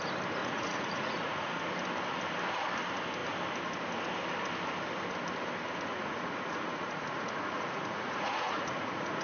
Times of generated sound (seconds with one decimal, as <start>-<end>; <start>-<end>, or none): 0.4-1.6; 5.9-9.2